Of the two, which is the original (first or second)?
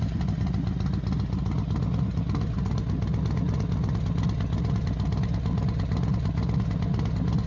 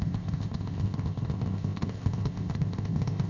first